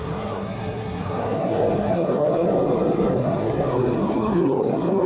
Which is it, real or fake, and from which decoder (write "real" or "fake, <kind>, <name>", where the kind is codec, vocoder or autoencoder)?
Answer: fake, codec, SNAC